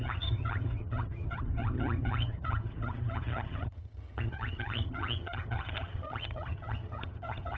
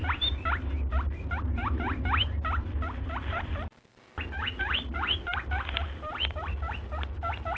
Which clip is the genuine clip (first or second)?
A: second